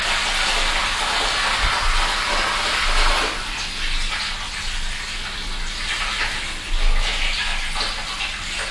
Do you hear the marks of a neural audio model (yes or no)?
no